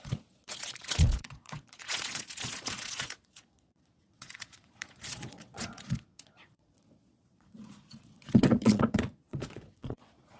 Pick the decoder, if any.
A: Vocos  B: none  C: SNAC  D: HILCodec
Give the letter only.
A